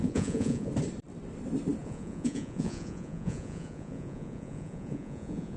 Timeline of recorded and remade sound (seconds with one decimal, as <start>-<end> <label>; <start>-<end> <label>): 0.0-0.7 remade; 0.7-1.8 recorded; 1.8-5.6 remade